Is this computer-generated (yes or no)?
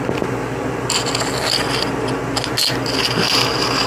no